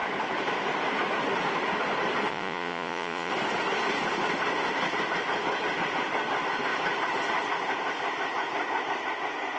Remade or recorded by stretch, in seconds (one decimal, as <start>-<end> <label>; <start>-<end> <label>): 0.0-2.3 recorded; 2.3-3.3 remade; 3.3-9.6 recorded